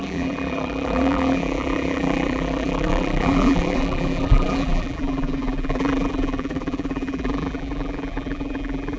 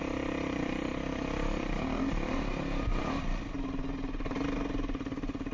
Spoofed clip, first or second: first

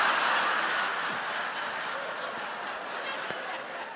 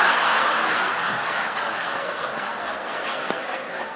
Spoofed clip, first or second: second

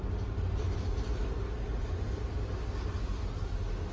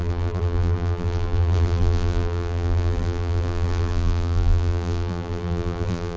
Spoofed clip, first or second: second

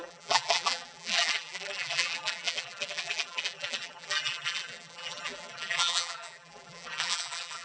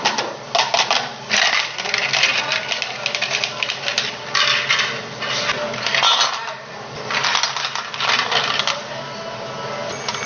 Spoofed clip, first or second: first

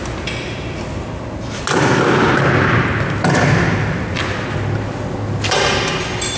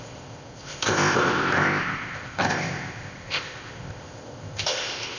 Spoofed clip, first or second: second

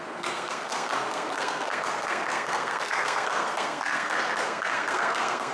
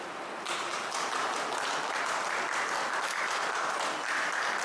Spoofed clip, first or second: first